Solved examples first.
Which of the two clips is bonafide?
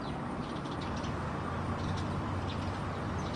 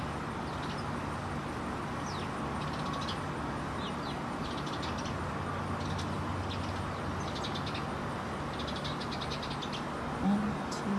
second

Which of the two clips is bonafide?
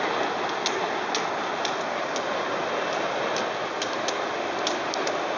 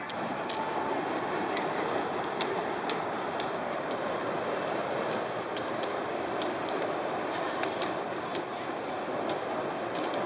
first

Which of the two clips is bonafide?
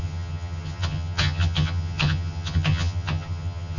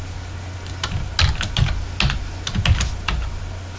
second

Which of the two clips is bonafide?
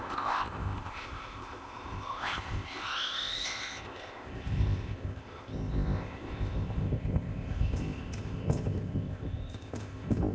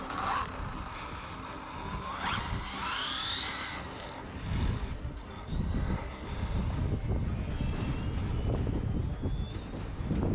second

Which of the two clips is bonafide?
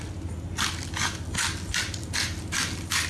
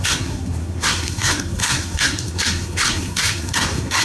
first